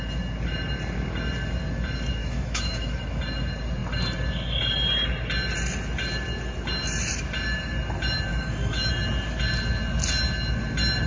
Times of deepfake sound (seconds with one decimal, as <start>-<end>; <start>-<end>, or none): 2.2-3.2; 8.3-8.9